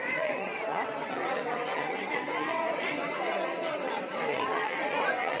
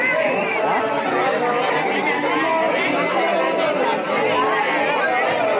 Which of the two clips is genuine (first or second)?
second